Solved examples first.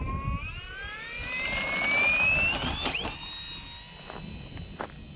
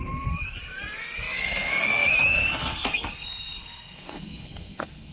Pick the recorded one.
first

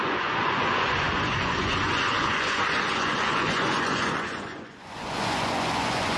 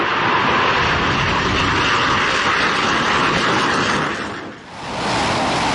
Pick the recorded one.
second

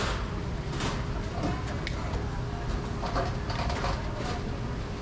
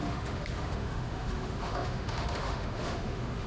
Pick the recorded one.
first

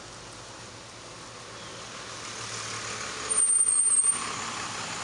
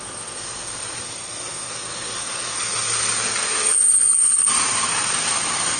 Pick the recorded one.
first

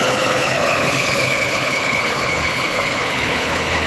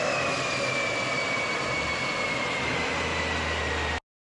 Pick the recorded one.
second